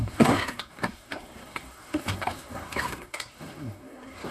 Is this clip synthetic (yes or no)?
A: yes